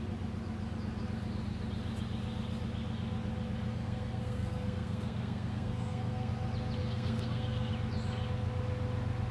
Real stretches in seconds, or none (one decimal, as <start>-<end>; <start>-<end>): 0.0-3.7; 6.3-6.8; 7.7-9.3